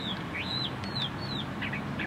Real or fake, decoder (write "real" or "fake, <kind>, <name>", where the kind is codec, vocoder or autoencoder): real